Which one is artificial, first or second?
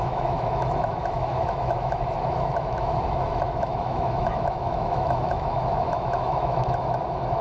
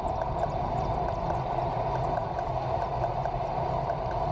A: first